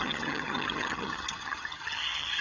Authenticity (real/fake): fake